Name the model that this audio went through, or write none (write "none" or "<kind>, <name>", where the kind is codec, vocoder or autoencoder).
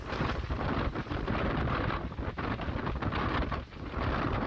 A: none